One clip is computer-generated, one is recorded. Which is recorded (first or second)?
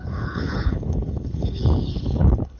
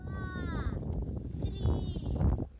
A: second